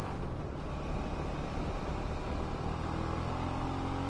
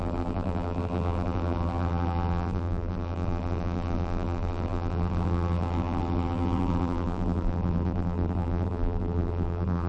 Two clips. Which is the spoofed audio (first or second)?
second